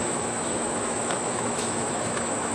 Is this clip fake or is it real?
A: fake